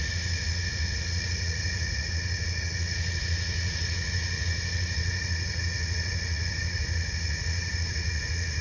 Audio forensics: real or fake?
fake